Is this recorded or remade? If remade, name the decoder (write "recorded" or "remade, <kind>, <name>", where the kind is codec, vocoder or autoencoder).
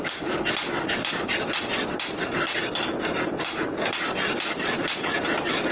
recorded